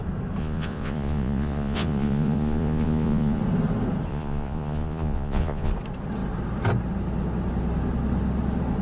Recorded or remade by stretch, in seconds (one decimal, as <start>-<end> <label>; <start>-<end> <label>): 0.0-0.4 recorded; 0.4-3.4 remade; 3.4-4.1 recorded; 4.1-5.7 remade; 5.7-8.8 recorded